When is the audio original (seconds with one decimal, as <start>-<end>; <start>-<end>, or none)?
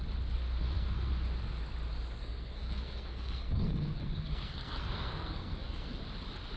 0.0-0.6; 1.1-2.2; 6.0-6.6